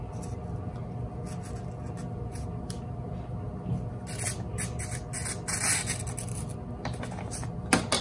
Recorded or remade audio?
recorded